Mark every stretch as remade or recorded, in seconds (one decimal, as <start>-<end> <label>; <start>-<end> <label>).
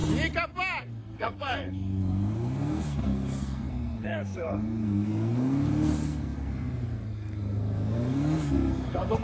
0.0-0.8 recorded; 0.8-9.2 remade